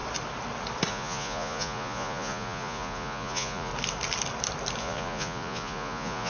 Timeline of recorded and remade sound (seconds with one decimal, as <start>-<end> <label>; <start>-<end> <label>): 0.0-0.9 recorded; 0.9-3.7 remade; 3.7-4.8 recorded; 4.8-6.3 remade